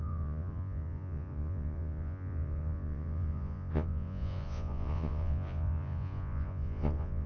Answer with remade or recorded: remade